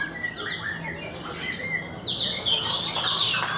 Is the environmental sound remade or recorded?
recorded